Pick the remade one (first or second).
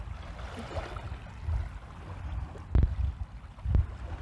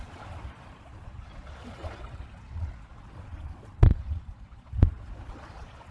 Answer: second